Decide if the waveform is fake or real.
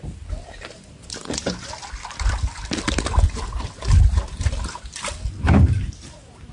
real